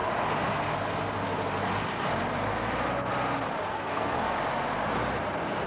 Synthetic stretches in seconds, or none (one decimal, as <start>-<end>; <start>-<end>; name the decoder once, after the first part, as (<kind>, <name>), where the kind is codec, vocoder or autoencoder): 3.7-4.3 (codec, SNAC)